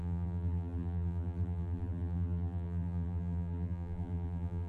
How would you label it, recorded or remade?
remade